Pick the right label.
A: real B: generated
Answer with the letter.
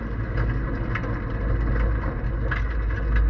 A